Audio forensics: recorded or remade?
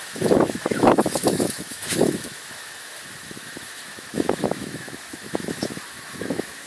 remade